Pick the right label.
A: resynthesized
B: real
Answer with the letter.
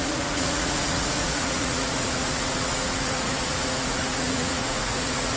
A